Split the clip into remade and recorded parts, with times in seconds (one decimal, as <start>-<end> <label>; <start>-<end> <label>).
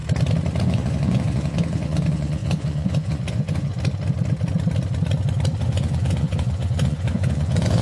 0.0-0.6 recorded; 0.6-3.7 remade; 3.7-5.6 recorded; 5.6-7.8 remade